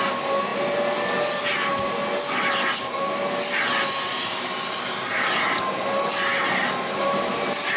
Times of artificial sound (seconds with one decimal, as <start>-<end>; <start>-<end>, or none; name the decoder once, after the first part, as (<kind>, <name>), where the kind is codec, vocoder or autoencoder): none